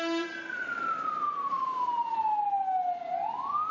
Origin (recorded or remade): recorded